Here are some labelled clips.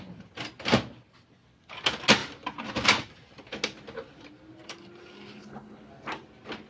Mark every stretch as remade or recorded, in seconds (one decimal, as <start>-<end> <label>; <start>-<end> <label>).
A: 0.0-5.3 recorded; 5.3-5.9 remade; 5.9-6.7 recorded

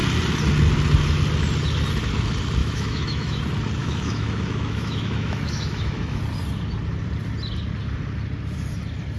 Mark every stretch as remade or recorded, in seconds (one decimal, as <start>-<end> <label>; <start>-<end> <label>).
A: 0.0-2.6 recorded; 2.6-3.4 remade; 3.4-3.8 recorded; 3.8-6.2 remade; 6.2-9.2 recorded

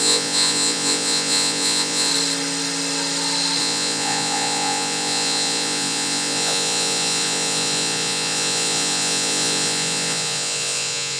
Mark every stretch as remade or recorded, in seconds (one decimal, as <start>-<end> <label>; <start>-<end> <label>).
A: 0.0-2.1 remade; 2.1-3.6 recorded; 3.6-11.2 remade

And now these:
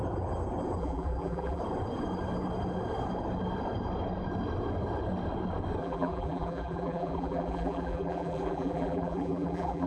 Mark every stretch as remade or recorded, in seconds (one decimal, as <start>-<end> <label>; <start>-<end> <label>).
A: 0.0-0.8 recorded; 0.8-1.6 remade; 1.6-5.8 recorded; 5.8-9.9 remade

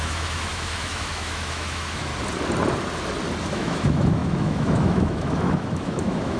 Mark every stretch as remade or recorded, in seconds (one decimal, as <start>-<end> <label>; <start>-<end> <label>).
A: 0.0-2.1 remade; 2.1-3.4 recorded; 3.4-6.4 remade

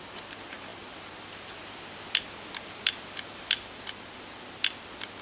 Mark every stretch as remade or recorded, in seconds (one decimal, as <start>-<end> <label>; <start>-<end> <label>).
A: 0.0-5.2 recorded

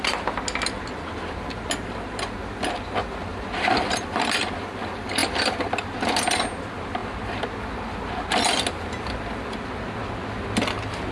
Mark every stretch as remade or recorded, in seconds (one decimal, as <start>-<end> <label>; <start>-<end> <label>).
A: 0.0-3.3 recorded; 3.3-4.4 remade; 4.4-5.2 recorded; 5.2-5.7 remade; 5.7-11.1 recorded